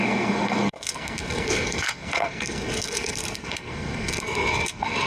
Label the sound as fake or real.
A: fake